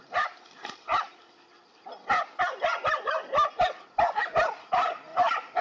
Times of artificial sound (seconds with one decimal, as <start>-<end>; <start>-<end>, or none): 0.0-0.9; 4.3-5.1